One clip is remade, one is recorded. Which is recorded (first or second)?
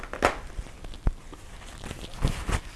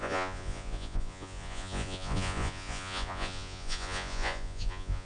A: first